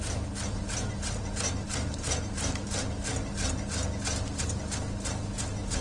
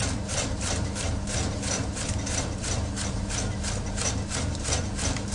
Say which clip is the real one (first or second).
first